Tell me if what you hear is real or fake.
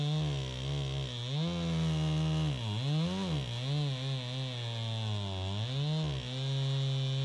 real